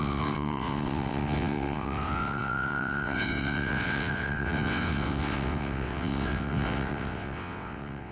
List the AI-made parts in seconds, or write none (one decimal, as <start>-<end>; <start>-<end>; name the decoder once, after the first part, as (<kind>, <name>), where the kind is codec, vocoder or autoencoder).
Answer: 0.0-8.1 (vocoder, WaveNeXt)

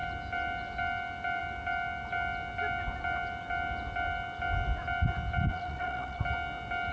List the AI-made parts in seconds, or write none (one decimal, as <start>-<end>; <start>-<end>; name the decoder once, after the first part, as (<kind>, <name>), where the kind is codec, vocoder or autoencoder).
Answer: 5.5-6.2 (vocoder, Vocos)